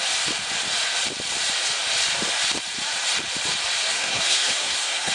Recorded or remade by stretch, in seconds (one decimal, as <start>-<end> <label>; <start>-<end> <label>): 0.0-3.9 recorded; 3.9-5.1 remade